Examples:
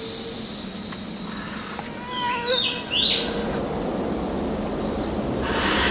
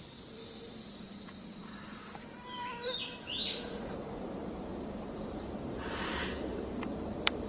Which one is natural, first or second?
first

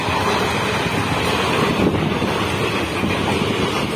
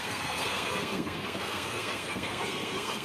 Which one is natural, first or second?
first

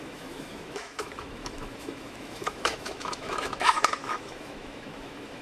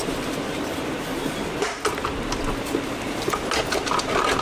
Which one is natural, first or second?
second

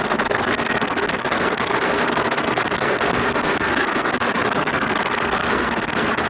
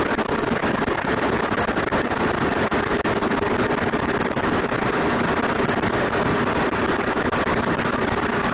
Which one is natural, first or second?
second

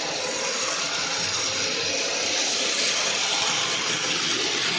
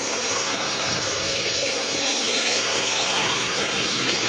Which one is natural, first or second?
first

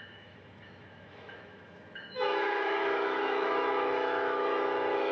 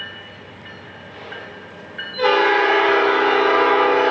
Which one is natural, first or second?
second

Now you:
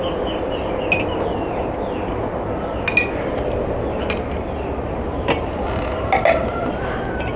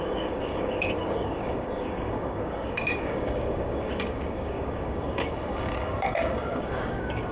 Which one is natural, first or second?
first